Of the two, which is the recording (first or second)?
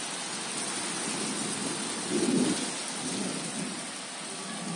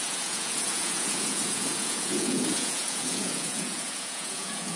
first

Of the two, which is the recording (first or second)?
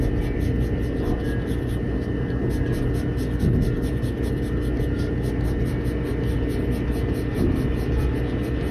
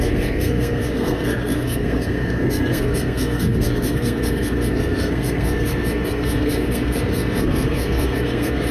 first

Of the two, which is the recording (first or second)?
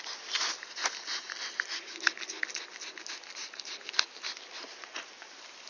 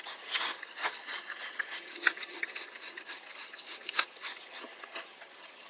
first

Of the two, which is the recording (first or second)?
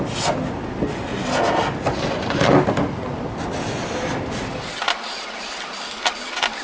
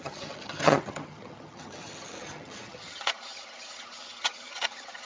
first